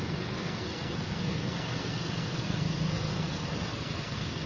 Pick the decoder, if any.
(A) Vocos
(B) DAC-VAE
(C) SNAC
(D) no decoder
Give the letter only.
C